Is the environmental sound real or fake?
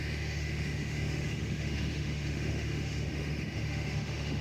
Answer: fake